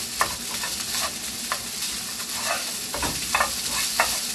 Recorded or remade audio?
recorded